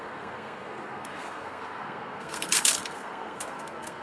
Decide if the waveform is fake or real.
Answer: fake